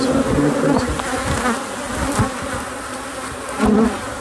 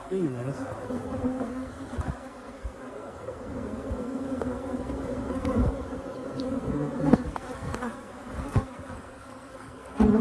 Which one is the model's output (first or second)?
second